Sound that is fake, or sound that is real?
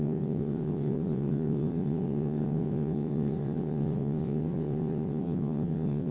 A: fake